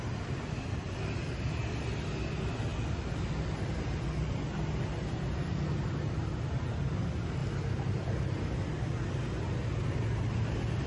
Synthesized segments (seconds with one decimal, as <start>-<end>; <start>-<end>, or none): none

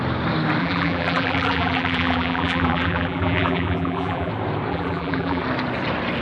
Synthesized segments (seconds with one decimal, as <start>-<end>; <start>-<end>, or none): 0.6-4.3; 4.7-5.4